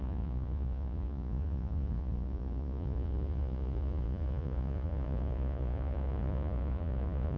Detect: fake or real fake